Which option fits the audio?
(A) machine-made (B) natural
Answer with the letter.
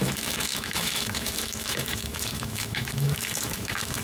A